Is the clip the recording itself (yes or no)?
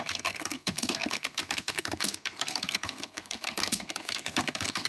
no